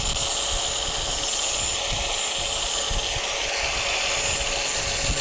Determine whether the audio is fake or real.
real